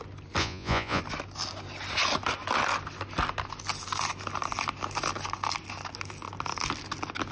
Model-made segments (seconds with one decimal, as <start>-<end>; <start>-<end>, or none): 0.4-1.0